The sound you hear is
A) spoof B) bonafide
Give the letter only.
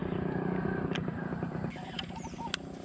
B